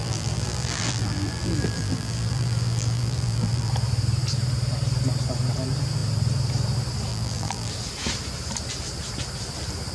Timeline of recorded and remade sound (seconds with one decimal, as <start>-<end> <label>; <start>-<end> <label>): 0.0-3.7 remade; 3.7-7.1 recorded; 7.1-7.7 remade; 7.7-9.9 recorded